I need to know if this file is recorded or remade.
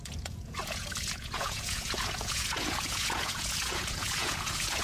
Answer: remade